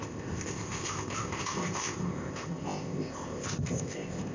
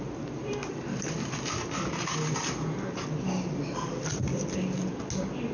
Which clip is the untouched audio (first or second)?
second